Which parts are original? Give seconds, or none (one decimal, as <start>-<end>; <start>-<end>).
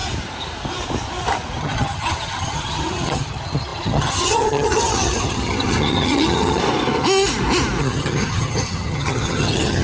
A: 0.0-1.6; 6.6-7.8